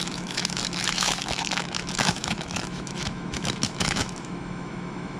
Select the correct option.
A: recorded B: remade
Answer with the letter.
B